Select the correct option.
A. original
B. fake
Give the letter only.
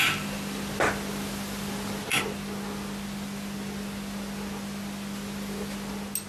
A